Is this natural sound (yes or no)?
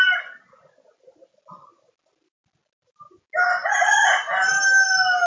yes